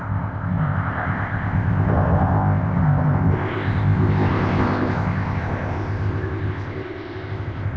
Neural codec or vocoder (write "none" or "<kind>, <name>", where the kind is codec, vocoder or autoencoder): codec, ZipCodec